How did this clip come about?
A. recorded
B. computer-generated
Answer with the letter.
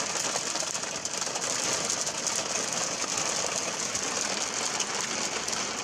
A